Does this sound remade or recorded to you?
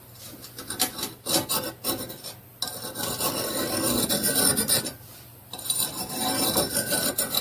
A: recorded